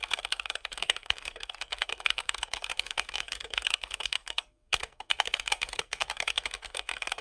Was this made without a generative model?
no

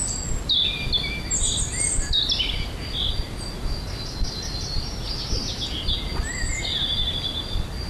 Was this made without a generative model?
yes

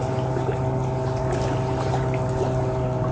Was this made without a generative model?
yes